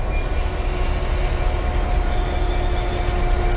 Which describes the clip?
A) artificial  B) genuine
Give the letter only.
B